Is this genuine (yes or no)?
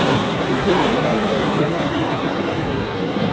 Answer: no